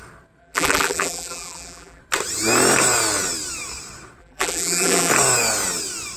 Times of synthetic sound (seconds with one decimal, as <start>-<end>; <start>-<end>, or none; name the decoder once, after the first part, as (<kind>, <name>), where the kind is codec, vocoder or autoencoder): 0.4-2.0 (vocoder, BigVGAN v2); 4.2-5.1